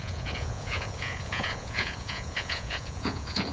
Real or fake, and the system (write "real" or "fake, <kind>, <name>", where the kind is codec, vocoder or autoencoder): fake, vocoder, Vocos